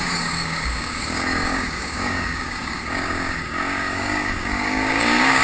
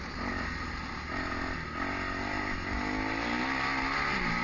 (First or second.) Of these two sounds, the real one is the second